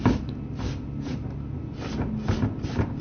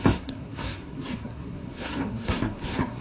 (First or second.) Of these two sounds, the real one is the first